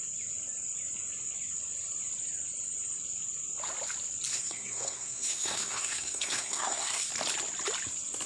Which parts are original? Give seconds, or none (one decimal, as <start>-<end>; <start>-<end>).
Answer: 0.0-4.3; 7.1-8.3